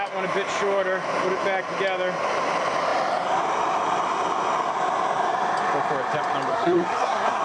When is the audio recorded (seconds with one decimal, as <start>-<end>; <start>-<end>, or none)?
0.0-6.5